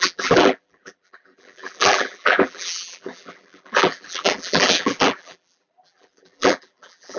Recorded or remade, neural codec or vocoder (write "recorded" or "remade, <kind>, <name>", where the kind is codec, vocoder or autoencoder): remade, vocoder, BigVGAN v2